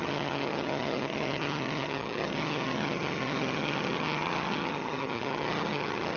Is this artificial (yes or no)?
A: yes